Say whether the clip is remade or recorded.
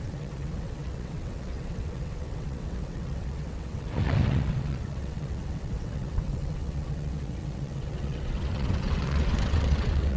remade